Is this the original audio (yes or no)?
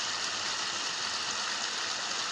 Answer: yes